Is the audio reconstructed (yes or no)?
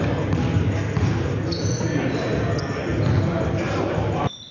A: no